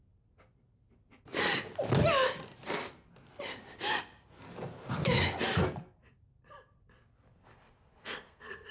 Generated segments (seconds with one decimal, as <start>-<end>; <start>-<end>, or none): 7.5-8.7